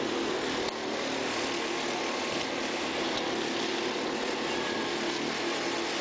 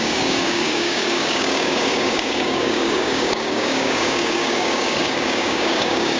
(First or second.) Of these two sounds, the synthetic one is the second